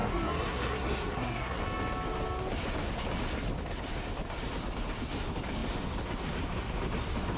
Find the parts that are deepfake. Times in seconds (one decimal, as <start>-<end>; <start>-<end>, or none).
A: 0.0-1.6